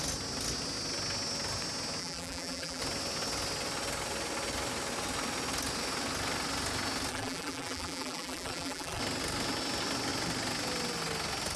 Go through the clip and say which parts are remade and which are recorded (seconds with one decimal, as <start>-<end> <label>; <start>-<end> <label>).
0.0-2.0 recorded; 2.0-2.8 remade; 2.8-7.1 recorded; 7.1-9.0 remade; 9.0-11.6 recorded